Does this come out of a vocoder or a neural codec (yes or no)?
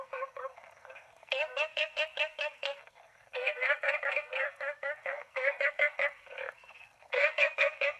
yes